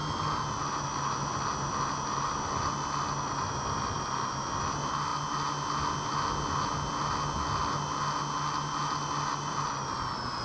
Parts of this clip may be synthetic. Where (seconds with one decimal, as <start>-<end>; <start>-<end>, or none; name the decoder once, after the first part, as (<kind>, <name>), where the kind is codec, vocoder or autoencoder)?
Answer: none